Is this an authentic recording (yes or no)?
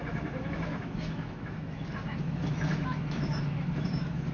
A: no